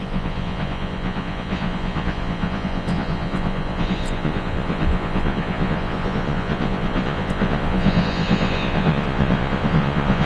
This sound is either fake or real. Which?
fake